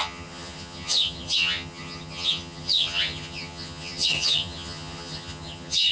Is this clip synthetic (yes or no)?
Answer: yes